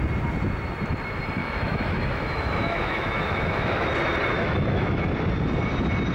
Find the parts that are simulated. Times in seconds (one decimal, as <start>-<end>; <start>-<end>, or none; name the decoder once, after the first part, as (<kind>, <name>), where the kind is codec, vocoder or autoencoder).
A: 1.4-3.9 (autoencoder, DAC-VAE); 4.3-5.0